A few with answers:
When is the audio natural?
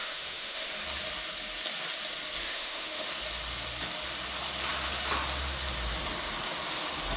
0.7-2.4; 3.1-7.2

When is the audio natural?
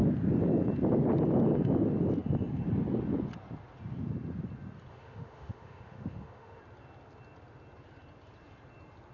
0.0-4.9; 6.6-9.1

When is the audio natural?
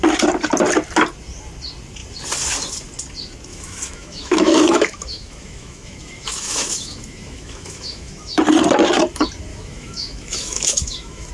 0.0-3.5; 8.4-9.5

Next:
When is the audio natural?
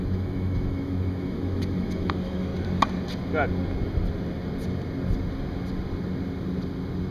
2.5-7.1